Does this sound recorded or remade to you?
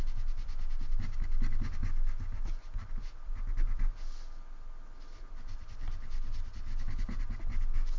recorded